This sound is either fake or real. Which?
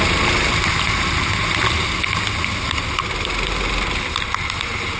real